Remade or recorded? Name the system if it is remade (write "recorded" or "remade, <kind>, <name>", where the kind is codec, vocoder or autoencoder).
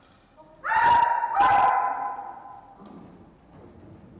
recorded